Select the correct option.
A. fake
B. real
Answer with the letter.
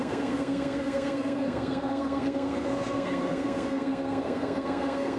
A